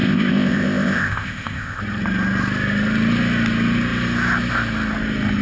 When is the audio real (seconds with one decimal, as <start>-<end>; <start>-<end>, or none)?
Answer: 1.8-5.4